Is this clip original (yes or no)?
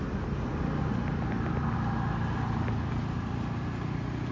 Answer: yes